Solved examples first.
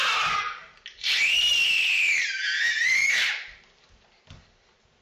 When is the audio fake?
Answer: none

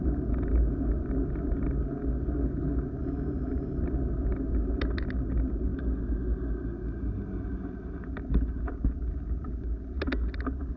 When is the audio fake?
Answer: 3.0-3.8 (autoencoder, DAC-VAE)

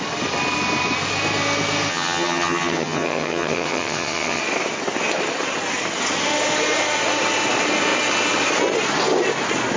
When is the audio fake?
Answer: 1.9-4.4 (vocoder, HiFi-GAN)